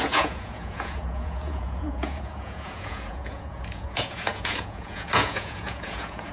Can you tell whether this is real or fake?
fake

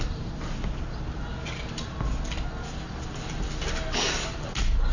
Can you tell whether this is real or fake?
real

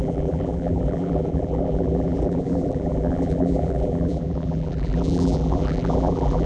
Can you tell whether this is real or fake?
fake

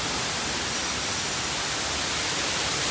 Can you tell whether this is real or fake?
real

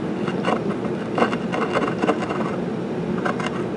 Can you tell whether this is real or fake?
real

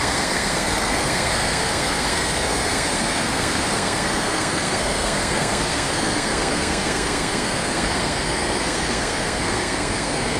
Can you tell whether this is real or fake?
fake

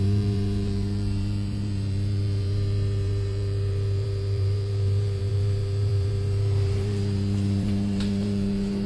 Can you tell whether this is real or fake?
fake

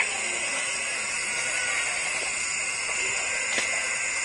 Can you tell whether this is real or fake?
real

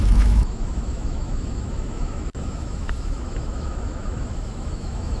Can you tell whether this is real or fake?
fake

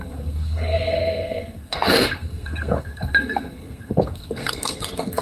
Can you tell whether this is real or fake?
fake